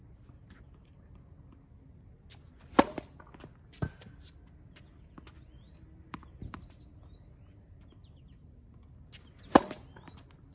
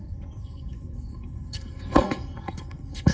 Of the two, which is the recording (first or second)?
first